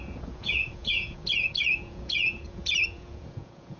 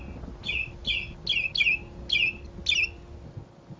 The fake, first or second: first